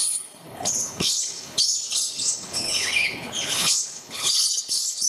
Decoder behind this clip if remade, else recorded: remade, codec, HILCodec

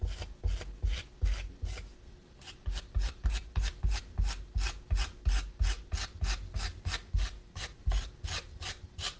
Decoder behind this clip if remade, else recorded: recorded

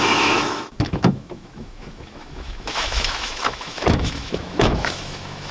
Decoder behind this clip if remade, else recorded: remade, autoencoder, DAC-VAE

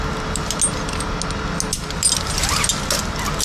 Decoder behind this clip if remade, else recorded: recorded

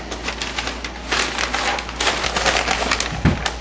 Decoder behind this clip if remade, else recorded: recorded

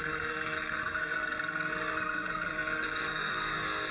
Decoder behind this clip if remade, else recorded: remade, codec, SNAC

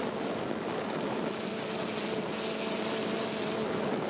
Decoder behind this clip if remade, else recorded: recorded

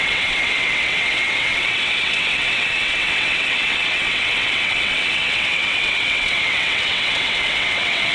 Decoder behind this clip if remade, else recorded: remade, vocoder, WaveNeXt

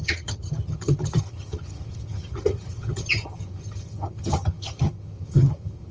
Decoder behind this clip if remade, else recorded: remade, vocoder, HiFi-GAN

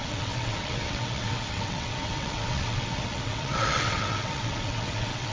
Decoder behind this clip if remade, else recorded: remade, vocoder, WaveNeXt